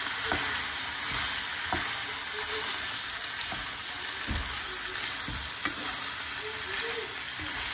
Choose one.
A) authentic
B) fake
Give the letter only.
A